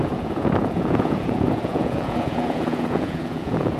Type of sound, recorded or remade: remade